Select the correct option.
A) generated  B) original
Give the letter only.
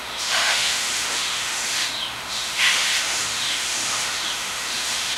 A